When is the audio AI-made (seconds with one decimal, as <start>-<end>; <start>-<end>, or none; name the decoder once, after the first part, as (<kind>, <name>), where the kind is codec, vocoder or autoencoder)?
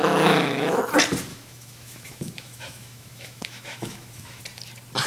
0.0-0.8 (autoencoder, DAC-VAE); 1.3-4.4